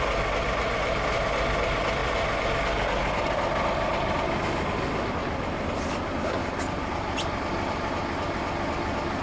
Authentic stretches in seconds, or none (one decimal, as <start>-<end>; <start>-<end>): 0.0-9.2